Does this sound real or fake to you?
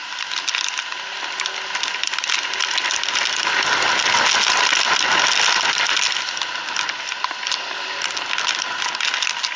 real